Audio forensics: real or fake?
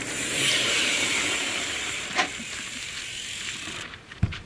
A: fake